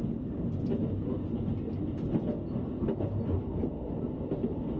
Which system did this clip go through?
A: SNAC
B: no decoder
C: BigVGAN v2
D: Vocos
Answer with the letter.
B